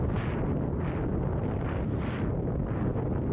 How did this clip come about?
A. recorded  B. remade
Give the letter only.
A